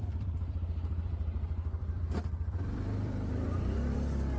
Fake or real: fake